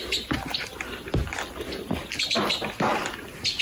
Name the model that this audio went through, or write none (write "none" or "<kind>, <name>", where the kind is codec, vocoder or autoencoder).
none